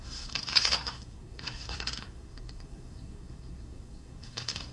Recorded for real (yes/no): no